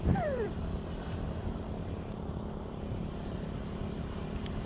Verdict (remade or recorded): remade